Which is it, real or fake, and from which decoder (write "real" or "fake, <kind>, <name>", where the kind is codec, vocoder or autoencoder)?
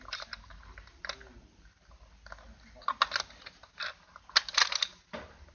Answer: real